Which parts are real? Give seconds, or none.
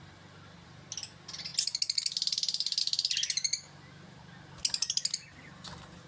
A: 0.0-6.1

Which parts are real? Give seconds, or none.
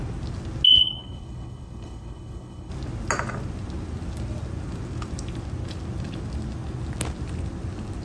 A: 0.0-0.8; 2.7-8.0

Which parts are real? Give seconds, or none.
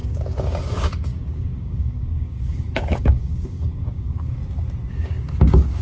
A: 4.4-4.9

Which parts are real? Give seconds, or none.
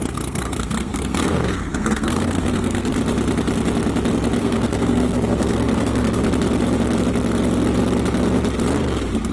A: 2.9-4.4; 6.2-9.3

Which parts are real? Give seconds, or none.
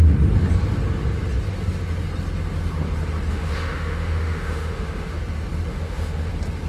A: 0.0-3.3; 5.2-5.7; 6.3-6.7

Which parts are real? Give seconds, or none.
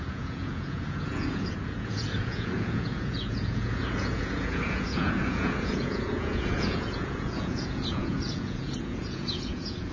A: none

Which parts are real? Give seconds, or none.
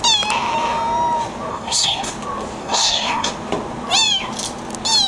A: 0.0-1.5; 2.1-2.6; 3.3-5.1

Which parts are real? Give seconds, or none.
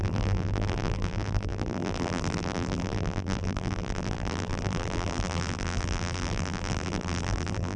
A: none